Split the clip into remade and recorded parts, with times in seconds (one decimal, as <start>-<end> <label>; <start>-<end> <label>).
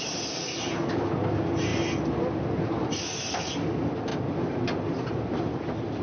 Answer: 0.0-6.0 recorded